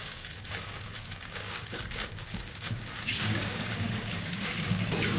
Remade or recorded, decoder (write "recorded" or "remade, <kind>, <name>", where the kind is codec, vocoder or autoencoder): remade, codec, DAC